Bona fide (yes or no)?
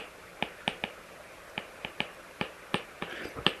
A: yes